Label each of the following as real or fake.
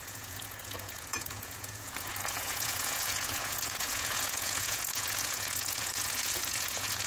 fake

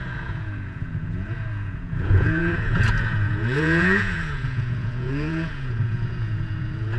fake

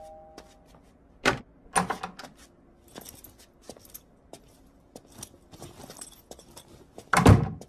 real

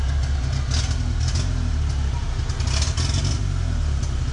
real